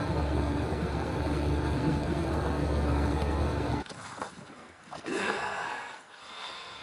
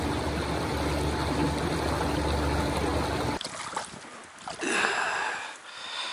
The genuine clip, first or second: second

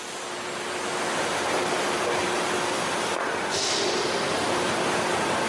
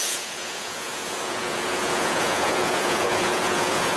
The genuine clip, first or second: first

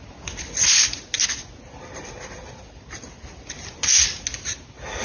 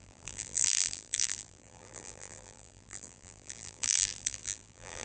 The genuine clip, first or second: first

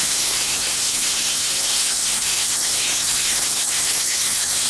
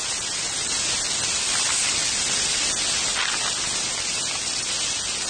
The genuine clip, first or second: second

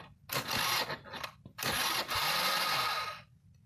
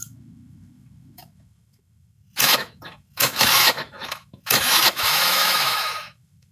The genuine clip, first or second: first